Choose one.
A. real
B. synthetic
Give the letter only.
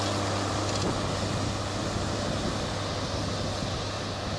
A